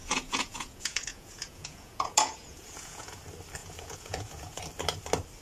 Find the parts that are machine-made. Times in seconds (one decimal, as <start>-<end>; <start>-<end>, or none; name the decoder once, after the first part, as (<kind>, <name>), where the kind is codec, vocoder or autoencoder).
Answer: 0.0-3.2 (vocoder, Vocos); 3.6-4.6